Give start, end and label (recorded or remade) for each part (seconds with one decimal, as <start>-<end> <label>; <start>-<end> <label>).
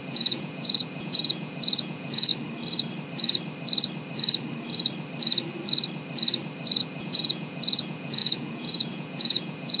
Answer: 0.0-2.3 remade; 2.3-6.8 recorded; 6.8-9.8 remade